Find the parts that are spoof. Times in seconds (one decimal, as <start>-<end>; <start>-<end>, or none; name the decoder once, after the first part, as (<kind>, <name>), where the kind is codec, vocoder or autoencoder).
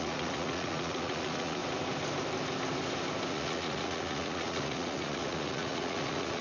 0.0-1.6 (vocoder, Vocos); 3.3-6.4